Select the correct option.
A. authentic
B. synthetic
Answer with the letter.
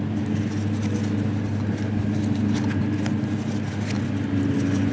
A